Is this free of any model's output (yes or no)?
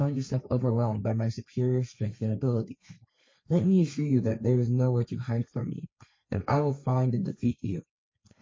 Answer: no